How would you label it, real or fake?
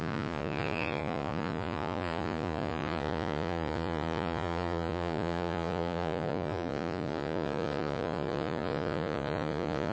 fake